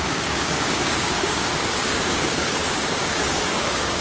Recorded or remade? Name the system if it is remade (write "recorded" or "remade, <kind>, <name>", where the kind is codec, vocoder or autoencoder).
remade, codec, DAC